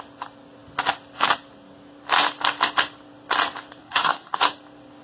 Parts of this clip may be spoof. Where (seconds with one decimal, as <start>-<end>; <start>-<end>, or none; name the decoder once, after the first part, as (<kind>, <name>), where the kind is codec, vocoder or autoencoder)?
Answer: 3.8-4.4 (codec, SNAC)